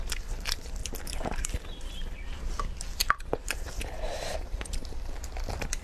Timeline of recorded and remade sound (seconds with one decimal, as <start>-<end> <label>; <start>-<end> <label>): 0.0-0.8 recorded; 0.8-1.5 remade; 1.5-3.0 recorded; 3.0-5.2 remade; 5.2-5.8 recorded